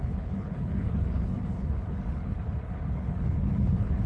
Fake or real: fake